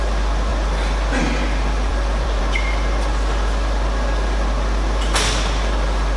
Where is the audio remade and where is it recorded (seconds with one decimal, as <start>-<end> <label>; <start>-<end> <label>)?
0.0-1.9 recorded; 1.9-2.4 remade; 2.4-6.2 recorded